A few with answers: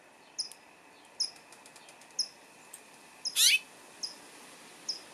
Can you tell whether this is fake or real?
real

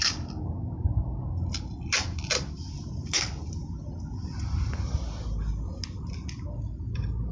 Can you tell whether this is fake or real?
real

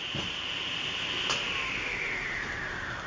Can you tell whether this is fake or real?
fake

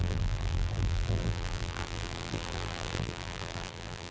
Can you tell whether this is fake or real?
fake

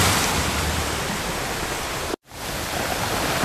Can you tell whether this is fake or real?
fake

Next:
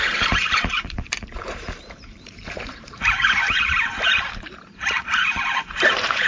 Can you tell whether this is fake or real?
fake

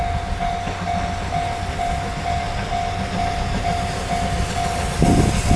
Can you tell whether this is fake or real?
real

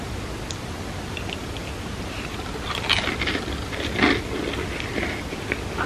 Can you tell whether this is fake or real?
real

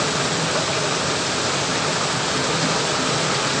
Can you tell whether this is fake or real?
real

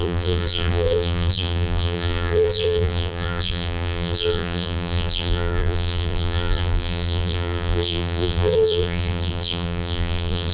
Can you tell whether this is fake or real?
fake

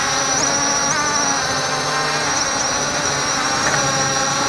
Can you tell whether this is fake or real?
real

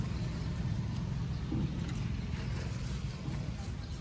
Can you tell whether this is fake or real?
real